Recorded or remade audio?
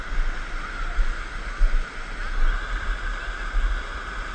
recorded